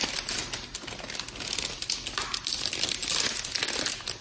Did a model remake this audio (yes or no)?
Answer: no